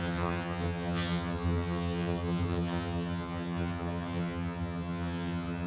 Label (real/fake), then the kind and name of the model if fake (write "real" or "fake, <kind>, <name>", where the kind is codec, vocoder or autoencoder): fake, vocoder, HiFi-GAN